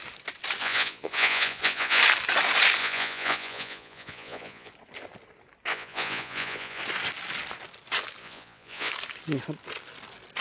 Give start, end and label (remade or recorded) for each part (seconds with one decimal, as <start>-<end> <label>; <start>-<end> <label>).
0.0-0.6 recorded; 0.6-2.0 remade; 2.0-2.8 recorded; 2.8-4.7 remade; 4.7-5.7 recorded; 5.7-6.8 remade; 6.8-8.2 recorded; 8.2-8.9 remade; 8.9-10.4 recorded